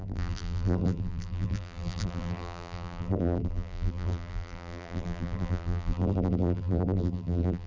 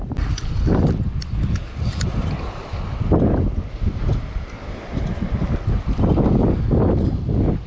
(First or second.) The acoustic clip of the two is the second